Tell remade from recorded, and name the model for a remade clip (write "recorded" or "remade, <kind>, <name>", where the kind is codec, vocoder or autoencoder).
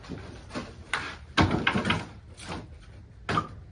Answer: recorded